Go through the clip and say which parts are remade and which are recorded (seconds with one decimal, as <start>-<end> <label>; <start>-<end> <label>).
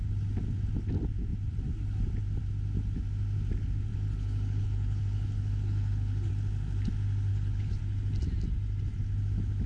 0.0-3.9 recorded; 3.9-6.3 remade; 6.3-7.3 recorded; 7.3-7.8 remade; 7.8-9.7 recorded